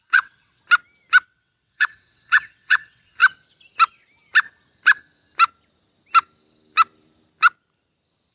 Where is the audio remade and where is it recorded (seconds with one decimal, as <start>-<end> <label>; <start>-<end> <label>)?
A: 0.0-0.6 remade; 0.6-1.2 recorded; 1.2-3.2 remade; 3.2-8.3 recorded